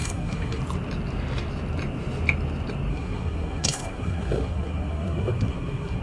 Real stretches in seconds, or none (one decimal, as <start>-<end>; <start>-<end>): 0.6-2.9